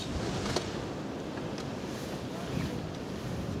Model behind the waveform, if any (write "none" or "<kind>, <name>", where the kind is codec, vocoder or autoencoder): none